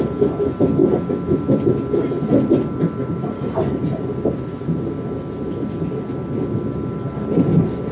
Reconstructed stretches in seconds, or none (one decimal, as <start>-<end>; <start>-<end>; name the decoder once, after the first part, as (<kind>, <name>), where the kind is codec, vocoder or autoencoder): 3.0-4.9 (vocoder, BigVGAN v2)